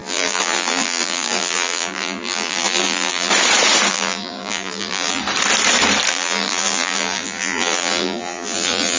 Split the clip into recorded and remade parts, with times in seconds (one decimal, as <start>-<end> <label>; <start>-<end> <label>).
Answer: 0.0-3.3 remade; 3.3-3.9 recorded; 3.9-5.2 remade; 5.2-6.1 recorded; 6.1-9.0 remade